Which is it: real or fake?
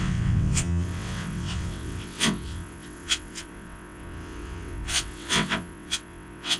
fake